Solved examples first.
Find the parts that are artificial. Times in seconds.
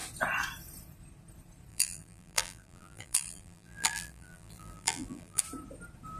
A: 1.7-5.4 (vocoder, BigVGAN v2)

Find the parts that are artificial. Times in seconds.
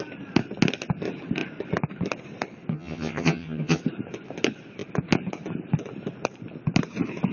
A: 2.7-3.8 (vocoder, HiFi-GAN)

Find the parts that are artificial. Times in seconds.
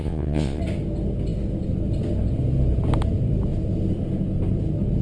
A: 0.0-0.6 (vocoder, Vocos)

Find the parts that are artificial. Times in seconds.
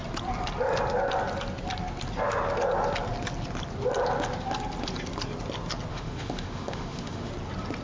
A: 5.9-7.3 (autoencoder, DAC-VAE)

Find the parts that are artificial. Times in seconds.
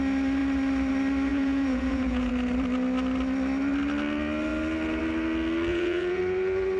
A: 1.3-2.3 (vocoder, Vocos); 5.7-6.2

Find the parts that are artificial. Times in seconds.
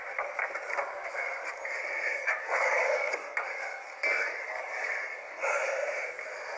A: 2.2-5.6 (codec, DAC)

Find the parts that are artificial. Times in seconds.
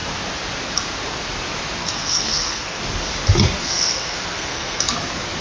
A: 1.8-2.8 (codec, SNAC); 3.6-4.8